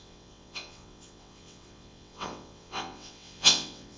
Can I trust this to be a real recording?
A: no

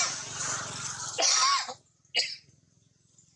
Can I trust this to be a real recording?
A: yes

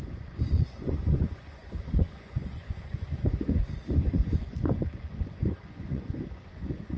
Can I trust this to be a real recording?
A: no